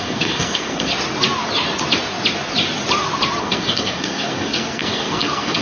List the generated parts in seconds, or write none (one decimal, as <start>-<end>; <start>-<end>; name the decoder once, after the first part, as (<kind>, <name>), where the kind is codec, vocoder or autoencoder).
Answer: 0.0-0.9 (codec, SNAC); 3.4-5.6